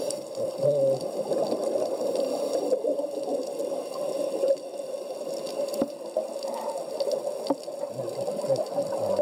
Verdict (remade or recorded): recorded